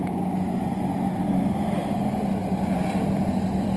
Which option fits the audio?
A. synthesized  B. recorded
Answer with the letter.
B